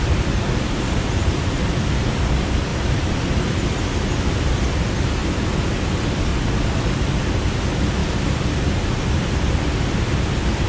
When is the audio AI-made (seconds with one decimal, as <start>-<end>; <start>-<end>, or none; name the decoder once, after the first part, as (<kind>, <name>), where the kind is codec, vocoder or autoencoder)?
2.7-4.8 (vocoder, BigVGAN v2); 6.3-7.4; 8.0-9.3